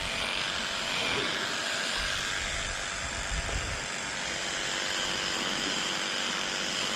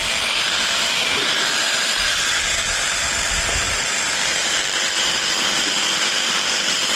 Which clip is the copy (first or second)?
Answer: second